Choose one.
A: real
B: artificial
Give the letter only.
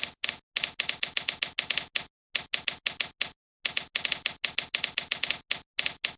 A